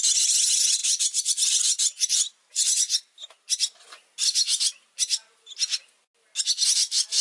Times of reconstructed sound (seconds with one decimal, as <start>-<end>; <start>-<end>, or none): none